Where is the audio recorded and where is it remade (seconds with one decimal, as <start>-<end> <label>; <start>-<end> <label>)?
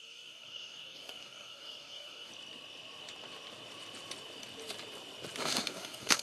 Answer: 0.0-2.3 remade; 2.3-5.4 recorded; 5.4-6.2 remade